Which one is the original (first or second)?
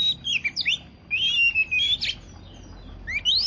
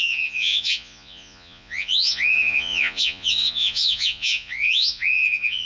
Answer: first